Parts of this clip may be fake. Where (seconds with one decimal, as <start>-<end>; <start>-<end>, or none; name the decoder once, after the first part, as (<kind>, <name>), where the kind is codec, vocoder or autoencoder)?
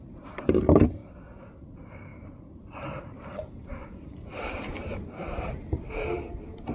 0.0-1.0 (vocoder, BigVGAN v2); 1.6-6.7